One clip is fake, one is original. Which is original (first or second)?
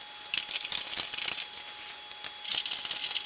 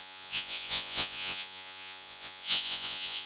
first